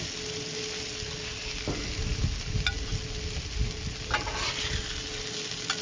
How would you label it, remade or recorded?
recorded